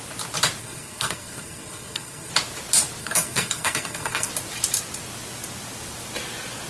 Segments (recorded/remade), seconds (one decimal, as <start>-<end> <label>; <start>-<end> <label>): 0.0-0.6 recorded; 0.6-2.3 remade; 2.3-3.0 recorded; 3.0-4.3 remade; 4.3-6.7 recorded